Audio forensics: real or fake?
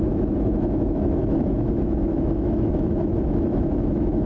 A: fake